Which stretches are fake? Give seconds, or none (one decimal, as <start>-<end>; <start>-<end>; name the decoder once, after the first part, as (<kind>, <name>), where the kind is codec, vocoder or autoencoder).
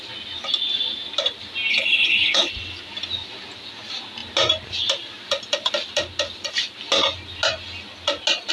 1.7-2.5 (codec, HILCodec)